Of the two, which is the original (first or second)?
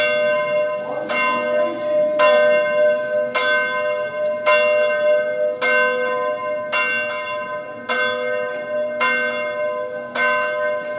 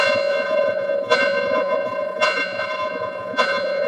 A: first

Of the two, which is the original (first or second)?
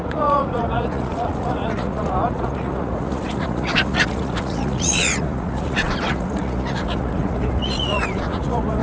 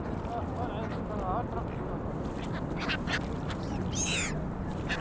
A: second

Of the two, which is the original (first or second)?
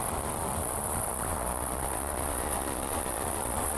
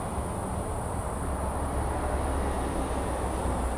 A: second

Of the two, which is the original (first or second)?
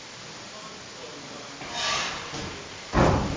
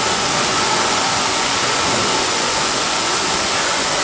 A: first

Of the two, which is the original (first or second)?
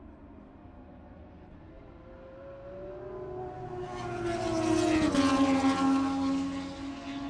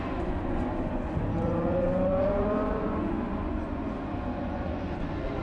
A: first